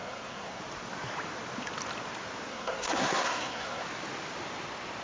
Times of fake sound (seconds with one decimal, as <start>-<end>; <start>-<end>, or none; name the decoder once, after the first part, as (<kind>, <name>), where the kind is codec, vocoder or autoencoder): 0.0-0.6 (codec, SNAC); 2.5-3.8